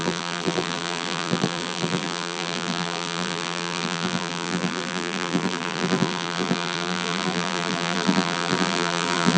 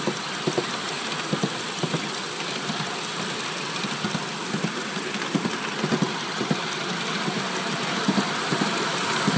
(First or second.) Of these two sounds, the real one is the second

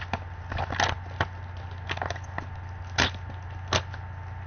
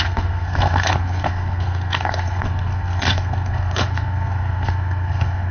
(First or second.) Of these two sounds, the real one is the first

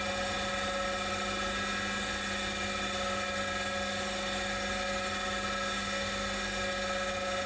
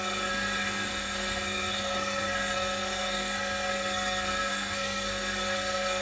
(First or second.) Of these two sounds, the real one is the first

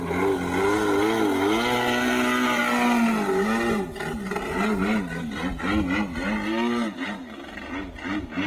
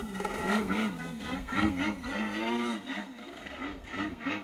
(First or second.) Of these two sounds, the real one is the first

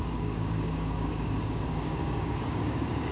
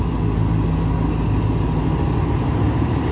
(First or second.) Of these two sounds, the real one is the second